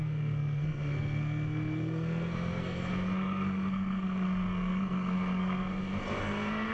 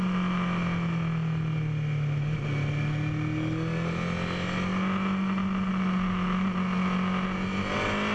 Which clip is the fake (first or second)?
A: first